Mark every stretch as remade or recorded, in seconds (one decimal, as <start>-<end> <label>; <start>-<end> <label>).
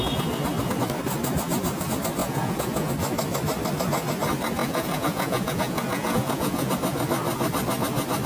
0.0-2.2 recorded; 2.2-2.9 remade; 2.9-4.6 recorded; 4.6-6.7 remade; 6.7-8.3 recorded